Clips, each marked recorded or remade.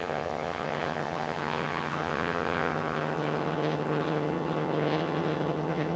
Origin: remade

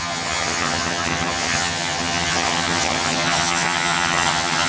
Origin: remade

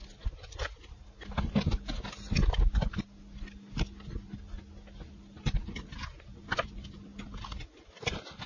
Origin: recorded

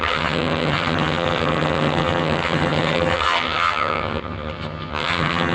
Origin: remade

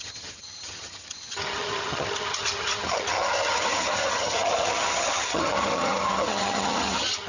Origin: remade